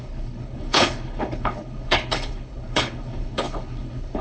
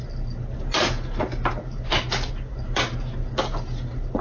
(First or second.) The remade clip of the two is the first